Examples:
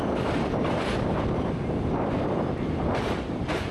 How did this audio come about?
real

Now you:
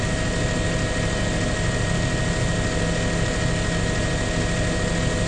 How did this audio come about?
real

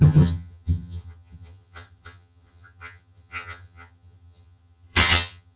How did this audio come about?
fake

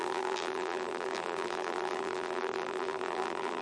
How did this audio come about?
fake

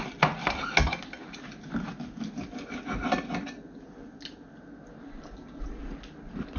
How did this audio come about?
real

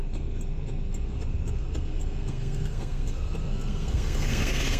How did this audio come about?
fake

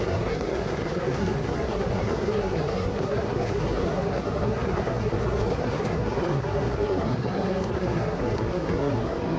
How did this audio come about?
fake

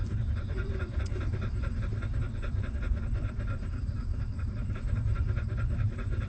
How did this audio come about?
fake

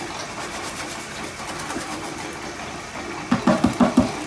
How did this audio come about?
real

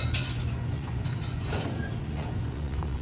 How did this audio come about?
fake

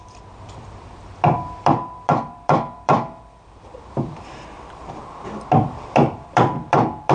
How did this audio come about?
fake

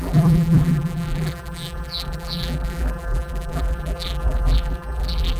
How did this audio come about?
fake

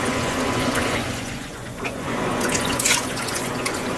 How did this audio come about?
fake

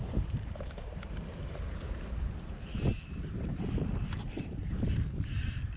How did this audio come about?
fake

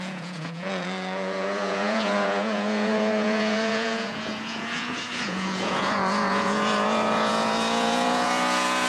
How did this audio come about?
fake